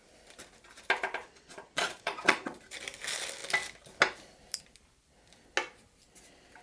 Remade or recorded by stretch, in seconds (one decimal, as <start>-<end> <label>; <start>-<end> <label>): 0.0-1.2 recorded; 1.2-2.6 remade; 2.6-6.6 recorded